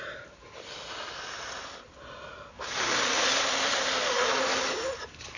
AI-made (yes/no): no